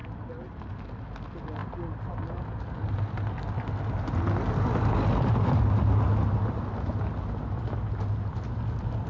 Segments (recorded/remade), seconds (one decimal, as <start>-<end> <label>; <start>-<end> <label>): 0.0-9.1 recorded